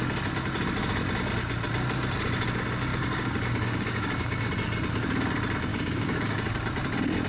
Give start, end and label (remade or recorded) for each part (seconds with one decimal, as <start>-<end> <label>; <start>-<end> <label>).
0.0-2.9 recorded; 2.9-4.5 remade; 4.5-5.7 recorded; 5.7-6.5 remade; 6.5-7.3 recorded